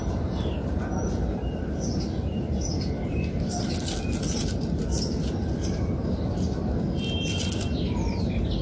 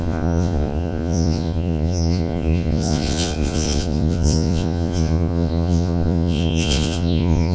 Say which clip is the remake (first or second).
second